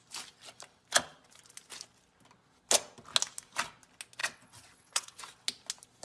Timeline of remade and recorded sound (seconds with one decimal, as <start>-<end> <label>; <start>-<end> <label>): 0.0-4.2 recorded; 4.2-5.2 remade; 5.2-6.0 recorded